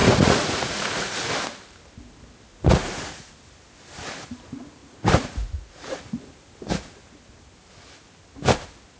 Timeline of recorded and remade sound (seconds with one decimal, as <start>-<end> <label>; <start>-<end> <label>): 0.0-1.3 remade; 1.3-2.5 recorded; 2.5-3.3 remade; 3.3-4.8 recorded; 4.8-6.0 remade; 6.0-9.0 recorded